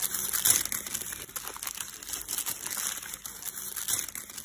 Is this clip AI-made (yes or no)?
no